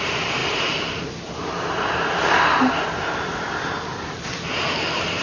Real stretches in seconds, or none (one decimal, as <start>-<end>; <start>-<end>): 0.0-5.2